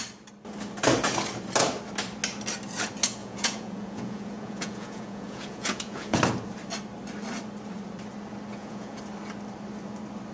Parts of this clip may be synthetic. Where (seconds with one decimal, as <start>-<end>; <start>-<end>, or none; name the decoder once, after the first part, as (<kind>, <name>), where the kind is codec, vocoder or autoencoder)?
3.2-6.2 (vocoder, Vocos); 8.5-9.0